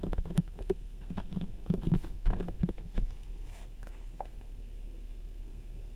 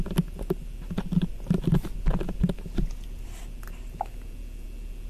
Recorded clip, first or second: second